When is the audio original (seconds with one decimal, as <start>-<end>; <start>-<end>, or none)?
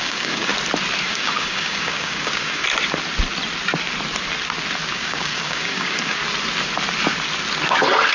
0.5-1.1; 2.6-4.9; 6.2-8.1